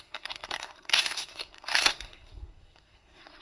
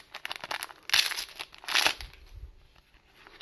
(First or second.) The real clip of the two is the second